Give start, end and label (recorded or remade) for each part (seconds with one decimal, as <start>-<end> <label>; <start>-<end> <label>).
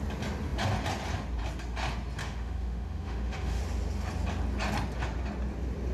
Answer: 0.0-2.2 recorded; 2.2-3.6 remade; 3.6-5.9 recorded